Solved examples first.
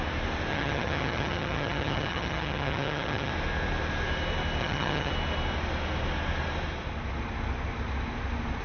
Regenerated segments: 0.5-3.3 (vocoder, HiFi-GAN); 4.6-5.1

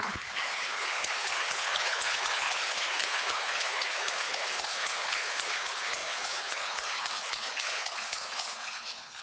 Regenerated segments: 0.0-9.2 (codec, HILCodec)

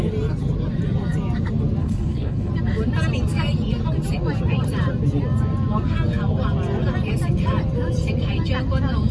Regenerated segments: 1.8-2.5 (codec, HILCodec)

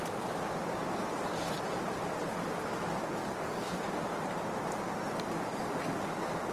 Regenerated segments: 3.2-3.9 (codec, DAC)

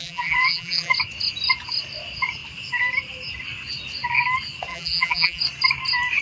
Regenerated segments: 0.0-0.9 (vocoder, BigVGAN v2); 4.7-5.4